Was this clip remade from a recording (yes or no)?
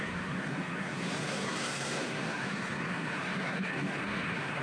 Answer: yes